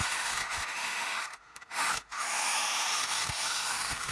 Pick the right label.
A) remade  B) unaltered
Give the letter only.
A